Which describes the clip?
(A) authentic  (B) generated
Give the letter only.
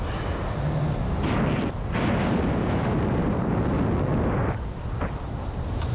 A